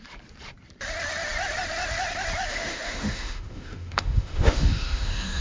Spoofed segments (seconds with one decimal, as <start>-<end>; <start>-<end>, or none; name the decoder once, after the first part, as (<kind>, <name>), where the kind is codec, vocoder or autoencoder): 2.5-5.4 (autoencoder, DAC-VAE)